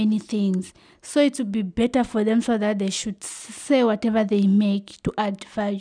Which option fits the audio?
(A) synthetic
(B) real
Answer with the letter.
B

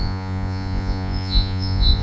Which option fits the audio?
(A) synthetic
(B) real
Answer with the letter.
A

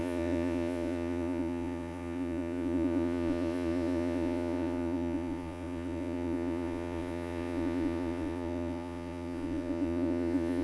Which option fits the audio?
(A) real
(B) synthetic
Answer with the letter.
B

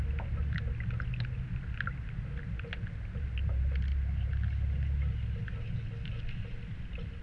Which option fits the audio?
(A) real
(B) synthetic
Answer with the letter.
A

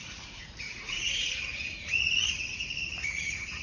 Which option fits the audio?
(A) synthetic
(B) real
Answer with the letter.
A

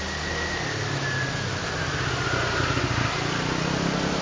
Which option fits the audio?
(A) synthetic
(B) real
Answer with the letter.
B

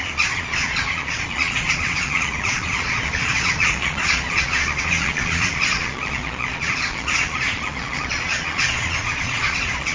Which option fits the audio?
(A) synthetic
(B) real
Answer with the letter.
A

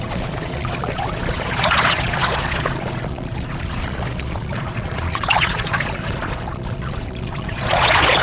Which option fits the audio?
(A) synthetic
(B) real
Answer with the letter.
A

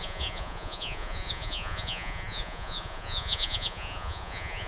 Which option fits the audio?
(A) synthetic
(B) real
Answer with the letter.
A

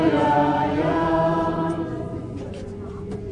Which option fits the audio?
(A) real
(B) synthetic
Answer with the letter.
B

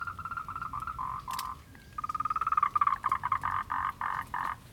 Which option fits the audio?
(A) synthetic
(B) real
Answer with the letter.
B